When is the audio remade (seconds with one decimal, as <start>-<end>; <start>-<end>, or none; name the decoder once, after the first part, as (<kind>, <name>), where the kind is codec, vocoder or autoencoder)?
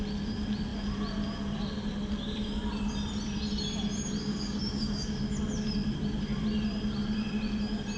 4.2-5.2 (codec, DAC)